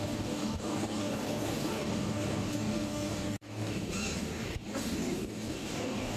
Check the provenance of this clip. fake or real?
fake